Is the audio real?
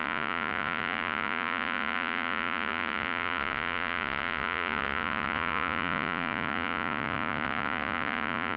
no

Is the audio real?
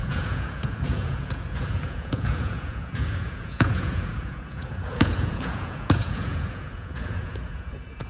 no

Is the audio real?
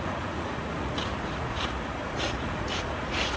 no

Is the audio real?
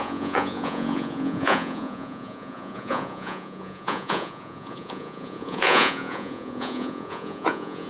no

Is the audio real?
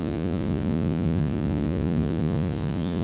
no